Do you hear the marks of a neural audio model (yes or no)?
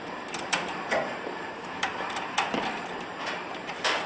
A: yes